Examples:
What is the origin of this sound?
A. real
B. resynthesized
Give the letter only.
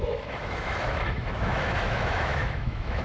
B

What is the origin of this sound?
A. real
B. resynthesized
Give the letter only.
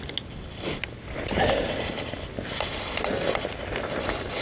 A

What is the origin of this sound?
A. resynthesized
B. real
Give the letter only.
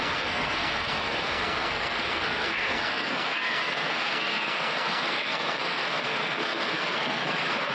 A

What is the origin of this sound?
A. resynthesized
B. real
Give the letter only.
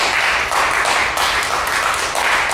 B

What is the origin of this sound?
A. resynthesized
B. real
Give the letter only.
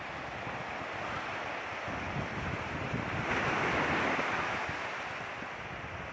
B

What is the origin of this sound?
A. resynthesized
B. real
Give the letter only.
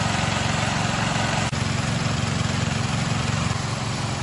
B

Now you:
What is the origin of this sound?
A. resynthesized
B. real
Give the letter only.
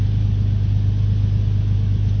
B